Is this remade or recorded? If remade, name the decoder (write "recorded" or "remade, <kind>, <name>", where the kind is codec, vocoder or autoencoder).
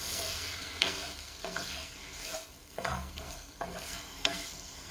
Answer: remade, codec, SNAC